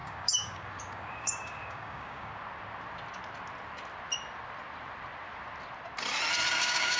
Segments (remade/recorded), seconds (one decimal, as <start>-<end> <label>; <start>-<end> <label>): 0.0-2.3 remade; 2.3-6.5 recorded; 6.5-7.0 remade